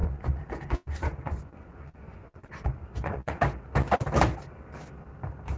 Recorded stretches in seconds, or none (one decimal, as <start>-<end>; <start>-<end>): 3.4-5.6